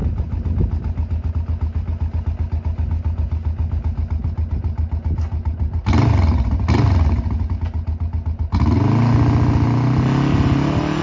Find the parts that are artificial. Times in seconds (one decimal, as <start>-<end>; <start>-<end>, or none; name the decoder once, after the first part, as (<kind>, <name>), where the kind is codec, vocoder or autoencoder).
none